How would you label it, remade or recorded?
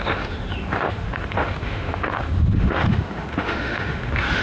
remade